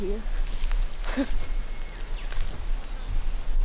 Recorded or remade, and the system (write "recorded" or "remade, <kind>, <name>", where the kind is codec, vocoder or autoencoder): recorded